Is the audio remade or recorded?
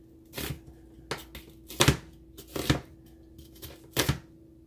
recorded